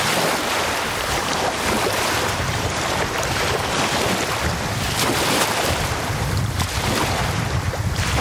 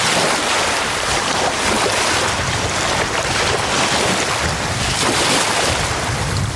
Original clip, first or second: second